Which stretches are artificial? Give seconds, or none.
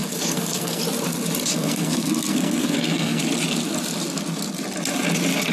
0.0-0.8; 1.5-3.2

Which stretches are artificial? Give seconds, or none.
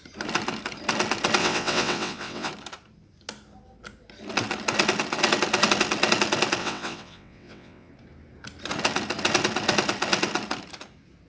1.4-2.5; 6.6-7.9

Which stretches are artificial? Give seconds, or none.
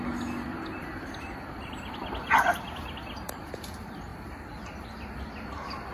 none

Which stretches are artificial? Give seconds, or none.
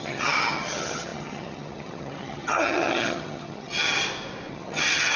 0.0-4.0; 4.5-5.2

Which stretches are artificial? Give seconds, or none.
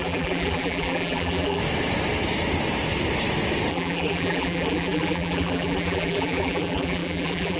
0.0-1.6; 3.7-7.6